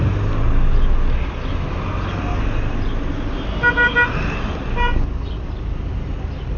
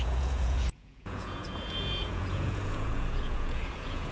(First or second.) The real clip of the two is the first